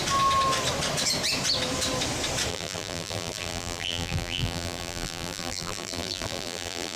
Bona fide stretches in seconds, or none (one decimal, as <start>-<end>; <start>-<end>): 0.0-2.5